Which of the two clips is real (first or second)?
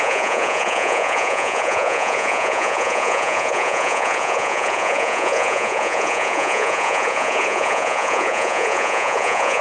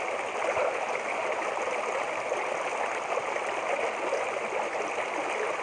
second